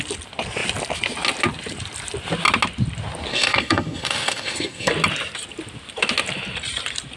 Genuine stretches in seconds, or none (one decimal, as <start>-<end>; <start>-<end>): 0.0-3.3; 4.9-7.2